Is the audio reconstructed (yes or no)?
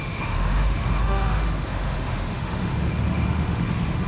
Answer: yes